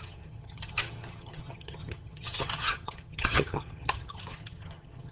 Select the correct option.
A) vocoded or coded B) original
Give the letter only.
A